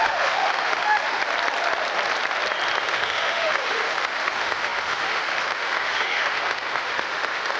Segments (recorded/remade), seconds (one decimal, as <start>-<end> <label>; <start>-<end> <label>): 0.0-1.2 remade; 1.2-2.8 recorded; 2.8-7.6 remade

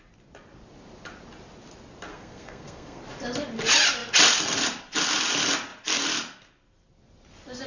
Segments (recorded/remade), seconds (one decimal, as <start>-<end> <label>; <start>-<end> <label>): 0.0-2.1 recorded; 2.1-3.0 remade; 3.0-7.7 recorded

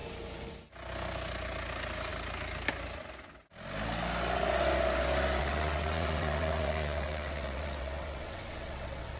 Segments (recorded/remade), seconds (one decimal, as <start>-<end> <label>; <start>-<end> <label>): 0.0-5.4 recorded; 5.4-9.2 remade

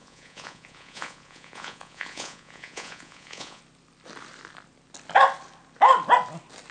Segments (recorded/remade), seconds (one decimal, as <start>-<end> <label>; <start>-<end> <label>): 0.0-3.6 remade; 3.6-6.7 recorded

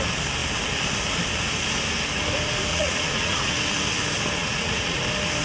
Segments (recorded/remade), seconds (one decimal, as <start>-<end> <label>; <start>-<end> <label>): 0.0-2.7 recorded; 2.7-3.6 remade; 3.6-4.4 recorded; 4.4-5.0 remade; 5.0-5.4 recorded

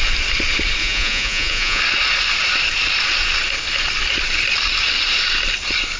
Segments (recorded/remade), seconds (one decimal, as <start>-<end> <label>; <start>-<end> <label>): 0.0-0.8 recorded; 0.8-1.8 remade; 1.8-6.0 recorded